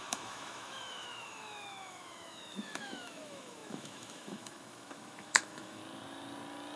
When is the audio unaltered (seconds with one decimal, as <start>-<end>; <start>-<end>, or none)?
5.8-6.8